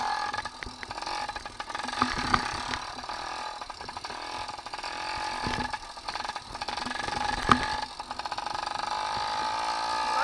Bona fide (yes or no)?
yes